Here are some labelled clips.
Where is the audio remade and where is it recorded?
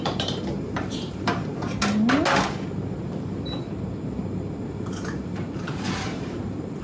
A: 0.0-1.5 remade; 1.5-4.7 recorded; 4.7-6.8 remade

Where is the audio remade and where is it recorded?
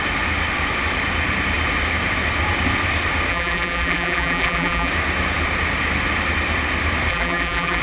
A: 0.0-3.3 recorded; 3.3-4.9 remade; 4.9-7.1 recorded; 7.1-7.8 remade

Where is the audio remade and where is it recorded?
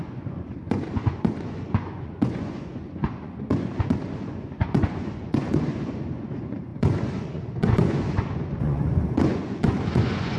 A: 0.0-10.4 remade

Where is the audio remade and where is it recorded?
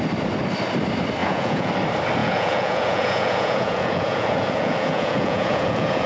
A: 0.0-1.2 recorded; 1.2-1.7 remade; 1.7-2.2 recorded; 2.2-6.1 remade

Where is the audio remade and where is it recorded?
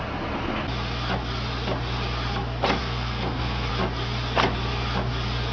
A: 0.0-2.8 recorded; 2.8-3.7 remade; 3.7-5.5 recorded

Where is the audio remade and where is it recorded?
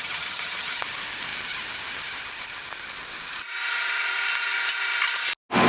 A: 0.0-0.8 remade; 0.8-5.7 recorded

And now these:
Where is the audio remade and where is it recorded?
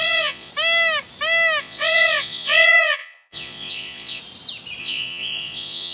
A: 0.0-0.5 remade; 0.5-1.6 recorded; 1.6-4.2 remade; 4.2-4.8 recorded; 4.8-5.9 remade